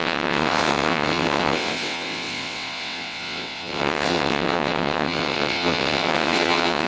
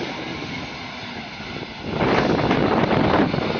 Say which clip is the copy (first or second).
first